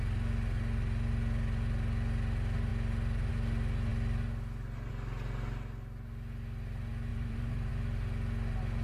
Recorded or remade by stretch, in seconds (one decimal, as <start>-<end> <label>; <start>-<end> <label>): 0.0-7.1 recorded; 7.1-7.7 remade; 7.7-8.8 recorded